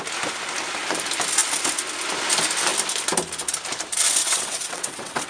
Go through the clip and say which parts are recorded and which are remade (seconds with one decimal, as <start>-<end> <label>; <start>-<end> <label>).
0.0-4.2 recorded; 4.2-5.3 remade